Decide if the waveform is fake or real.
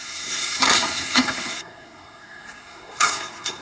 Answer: fake